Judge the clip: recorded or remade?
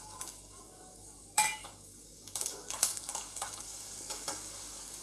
remade